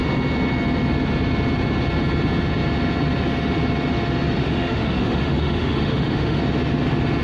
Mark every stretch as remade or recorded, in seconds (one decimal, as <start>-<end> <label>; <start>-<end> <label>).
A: 0.0-4.4 recorded; 4.4-6.4 remade; 6.4-7.2 recorded